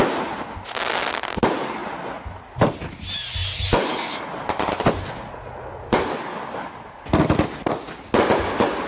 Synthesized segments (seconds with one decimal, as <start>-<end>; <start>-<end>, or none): none